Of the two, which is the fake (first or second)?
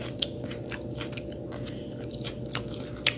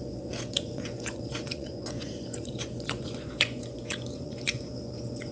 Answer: second